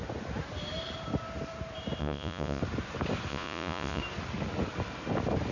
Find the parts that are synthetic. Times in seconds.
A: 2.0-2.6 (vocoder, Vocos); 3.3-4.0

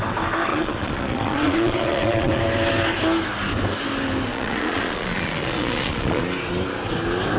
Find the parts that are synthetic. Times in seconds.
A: 0.5-2.4 (vocoder, Vocos); 4.3-6.2

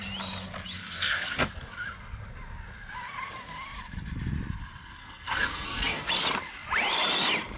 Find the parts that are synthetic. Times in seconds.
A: 0.8-1.5 (codec, SNAC); 5.0-6.1

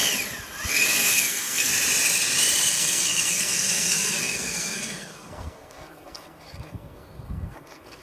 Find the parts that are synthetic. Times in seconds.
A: 0.7-1.7 (codec, SNAC); 2.7-8.0

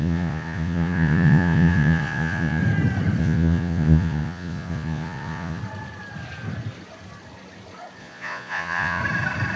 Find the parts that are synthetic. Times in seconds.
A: 0.0-2.6 (vocoder, Vocos); 3.2-5.6; 8.0-9.0

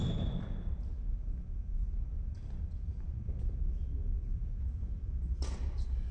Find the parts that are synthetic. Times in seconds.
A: none

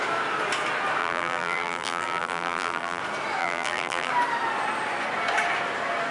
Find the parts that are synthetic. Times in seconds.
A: 1.0-3.0 (vocoder, BigVGAN v2); 3.4-4.1